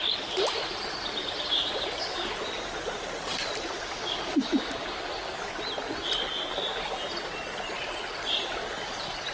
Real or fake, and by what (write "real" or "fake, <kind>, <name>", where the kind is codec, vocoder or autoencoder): real